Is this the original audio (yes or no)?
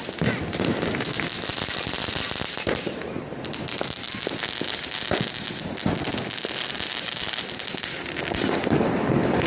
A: yes